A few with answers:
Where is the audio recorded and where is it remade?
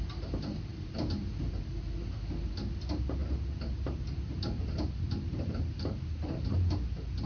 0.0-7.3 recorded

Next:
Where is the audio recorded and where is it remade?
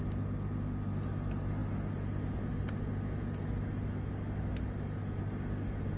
0.0-6.0 recorded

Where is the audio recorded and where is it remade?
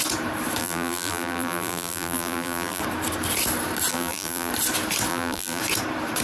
0.0-0.6 recorded; 0.6-2.8 remade; 2.8-3.9 recorded; 3.9-4.5 remade; 4.5-5.1 recorded; 5.1-5.6 remade; 5.6-6.2 recorded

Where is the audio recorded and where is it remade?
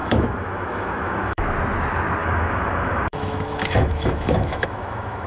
0.0-1.4 remade; 1.4-2.2 recorded; 2.2-5.3 remade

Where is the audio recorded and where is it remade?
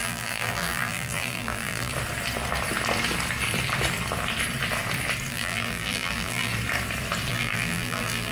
0.0-1.9 remade; 1.9-5.3 recorded; 5.3-6.5 remade; 6.5-7.3 recorded; 7.3-8.3 remade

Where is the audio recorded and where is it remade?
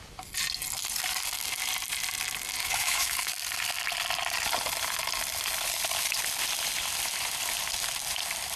0.0-2.6 recorded; 2.6-3.3 remade; 3.3-8.6 recorded